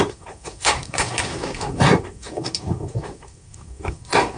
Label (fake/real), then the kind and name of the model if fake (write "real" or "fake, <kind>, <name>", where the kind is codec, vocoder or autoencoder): fake, codec, SNAC